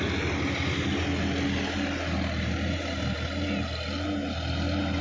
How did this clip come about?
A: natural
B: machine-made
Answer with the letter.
A